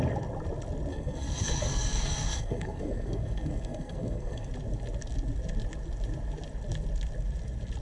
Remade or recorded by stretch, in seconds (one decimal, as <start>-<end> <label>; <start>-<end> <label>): 0.0-0.9 recorded; 0.9-4.5 remade; 4.5-7.8 recorded